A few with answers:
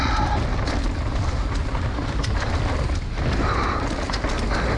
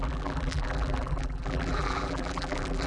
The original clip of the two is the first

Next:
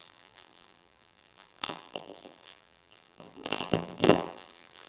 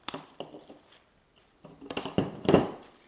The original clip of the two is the second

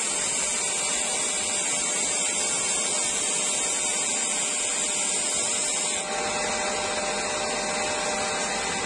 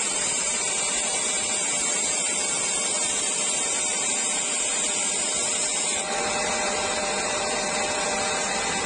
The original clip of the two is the first